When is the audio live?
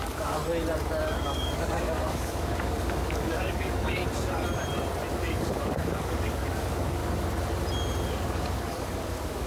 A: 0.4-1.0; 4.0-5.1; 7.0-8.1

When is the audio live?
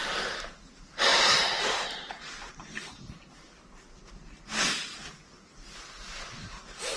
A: 0.0-1.1; 3.6-7.0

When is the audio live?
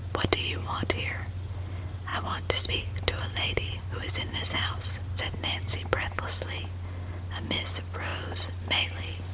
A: 0.0-9.3